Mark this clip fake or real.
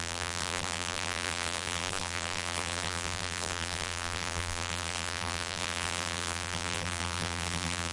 fake